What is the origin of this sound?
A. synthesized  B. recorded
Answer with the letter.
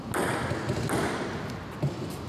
B